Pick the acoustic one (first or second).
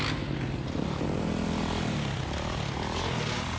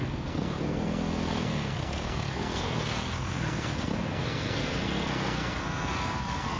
first